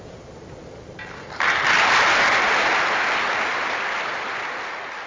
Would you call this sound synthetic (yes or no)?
no